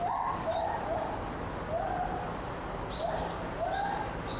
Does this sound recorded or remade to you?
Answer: recorded